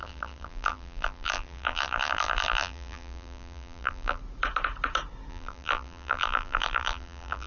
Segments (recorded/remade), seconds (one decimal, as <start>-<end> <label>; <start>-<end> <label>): 0.0-4.2 remade; 4.2-5.3 recorded; 5.3-7.5 remade